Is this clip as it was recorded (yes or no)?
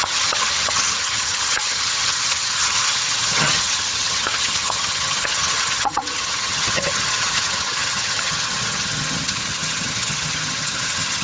no